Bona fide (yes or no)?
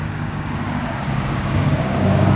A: no